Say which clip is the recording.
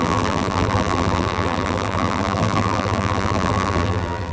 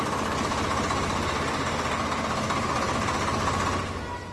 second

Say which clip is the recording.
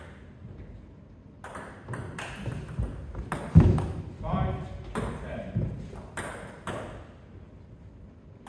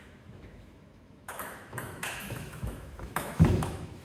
first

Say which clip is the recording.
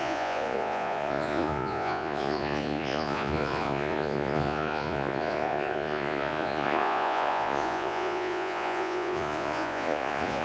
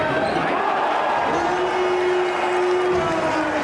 second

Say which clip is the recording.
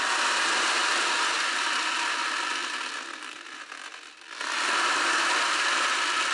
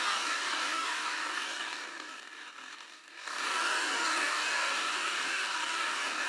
first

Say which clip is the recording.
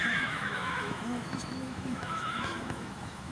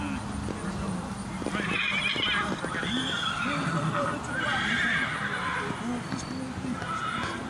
second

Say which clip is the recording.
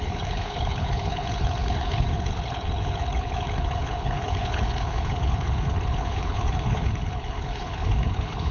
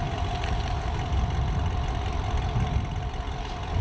second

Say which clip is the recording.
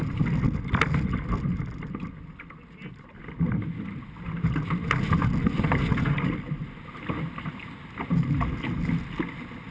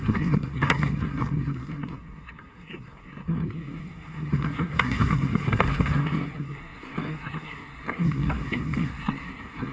first